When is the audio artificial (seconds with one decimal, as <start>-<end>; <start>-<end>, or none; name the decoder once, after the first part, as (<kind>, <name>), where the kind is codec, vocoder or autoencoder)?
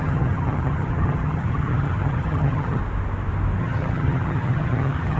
0.0-2.8 (vocoder, HiFi-GAN); 3.6-5.2